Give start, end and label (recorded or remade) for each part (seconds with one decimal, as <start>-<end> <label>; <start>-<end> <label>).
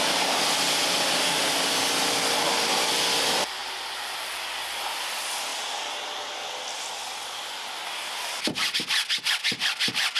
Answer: 0.0-10.2 recorded